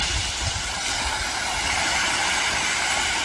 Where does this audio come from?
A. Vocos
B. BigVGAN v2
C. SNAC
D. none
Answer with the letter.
D